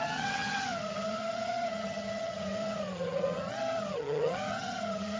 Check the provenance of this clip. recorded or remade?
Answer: remade